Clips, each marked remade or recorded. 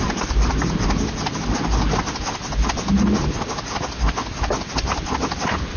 recorded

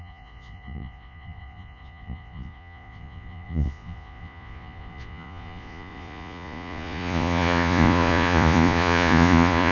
remade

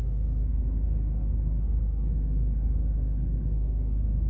remade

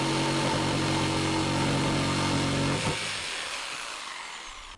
recorded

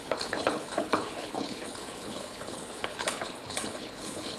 remade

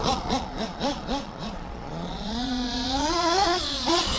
remade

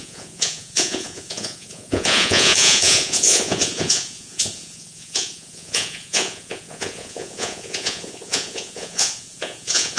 remade